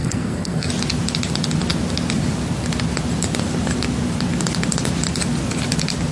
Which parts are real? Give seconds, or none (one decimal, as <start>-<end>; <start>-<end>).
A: 0.7-6.1